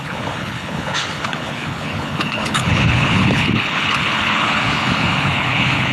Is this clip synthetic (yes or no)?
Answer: yes